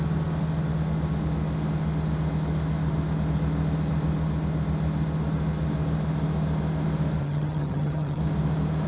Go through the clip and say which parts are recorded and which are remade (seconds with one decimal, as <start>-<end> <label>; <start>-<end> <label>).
0.0-7.2 recorded; 7.2-8.2 remade; 8.2-8.9 recorded